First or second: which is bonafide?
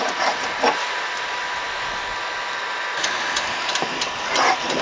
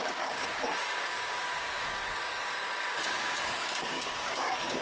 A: first